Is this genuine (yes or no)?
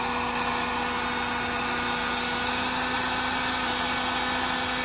yes